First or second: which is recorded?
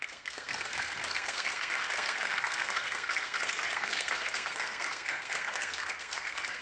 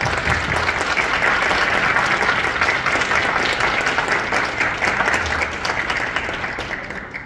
second